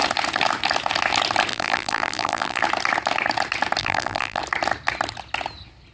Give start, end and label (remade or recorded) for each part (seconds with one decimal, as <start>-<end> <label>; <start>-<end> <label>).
0.0-1.5 recorded; 1.5-2.6 remade; 2.6-3.8 recorded; 3.8-4.4 remade; 4.4-5.9 recorded